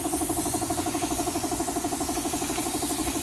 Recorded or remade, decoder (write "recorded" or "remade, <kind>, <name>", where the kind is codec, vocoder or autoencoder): remade, vocoder, Vocos